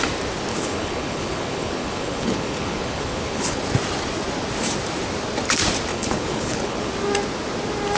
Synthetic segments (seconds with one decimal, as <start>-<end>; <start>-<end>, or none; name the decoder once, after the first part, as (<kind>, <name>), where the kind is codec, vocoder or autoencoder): 0.5-3.6 (codec, HILCodec); 5.9-6.9